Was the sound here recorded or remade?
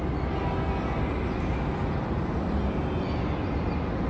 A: recorded